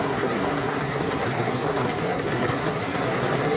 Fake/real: fake